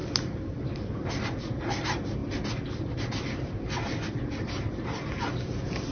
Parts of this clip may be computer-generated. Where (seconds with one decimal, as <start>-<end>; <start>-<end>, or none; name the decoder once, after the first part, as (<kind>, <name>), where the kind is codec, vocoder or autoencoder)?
none